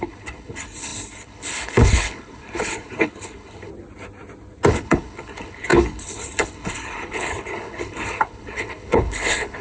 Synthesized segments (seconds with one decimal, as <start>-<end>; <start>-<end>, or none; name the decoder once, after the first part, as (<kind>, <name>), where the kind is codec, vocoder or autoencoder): 0.0-3.7 (codec, HILCodec); 4.7-9.6